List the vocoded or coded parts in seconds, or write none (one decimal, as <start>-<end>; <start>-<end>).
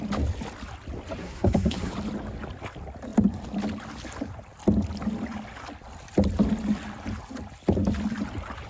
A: 1.2-1.9